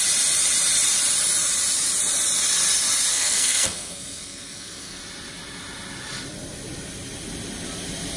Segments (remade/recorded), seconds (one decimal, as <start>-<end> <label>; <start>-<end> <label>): 0.0-3.1 recorded; 3.1-5.0 remade; 5.0-8.2 recorded